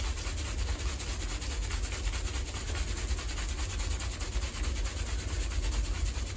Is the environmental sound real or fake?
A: real